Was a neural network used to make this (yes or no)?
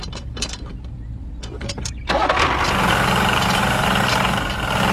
no